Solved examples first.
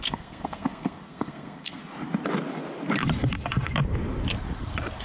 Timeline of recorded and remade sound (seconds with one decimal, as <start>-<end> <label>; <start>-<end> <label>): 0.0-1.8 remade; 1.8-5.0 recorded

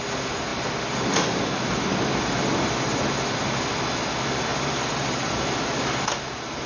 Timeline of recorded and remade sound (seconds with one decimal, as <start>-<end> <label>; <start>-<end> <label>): 0.0-4.5 recorded; 4.5-5.6 remade; 5.6-6.7 recorded

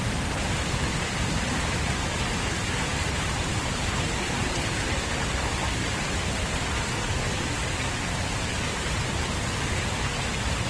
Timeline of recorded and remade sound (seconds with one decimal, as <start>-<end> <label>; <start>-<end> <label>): 0.0-10.7 recorded